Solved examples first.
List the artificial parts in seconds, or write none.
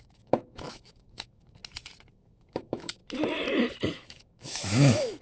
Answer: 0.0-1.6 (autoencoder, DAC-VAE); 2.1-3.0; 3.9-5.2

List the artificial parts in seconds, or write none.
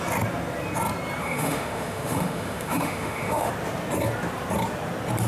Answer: 1.2-3.5 (autoencoder, DAC-VAE)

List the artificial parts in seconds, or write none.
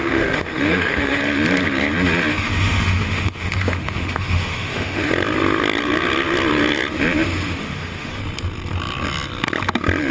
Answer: 0.0-1.2 (autoencoder, DAC-VAE); 2.3-5.1; 7.6-8.2